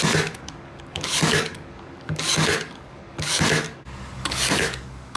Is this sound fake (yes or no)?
yes